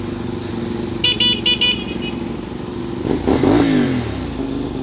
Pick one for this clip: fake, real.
real